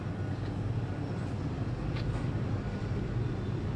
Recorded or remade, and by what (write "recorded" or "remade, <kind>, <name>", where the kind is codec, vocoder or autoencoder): recorded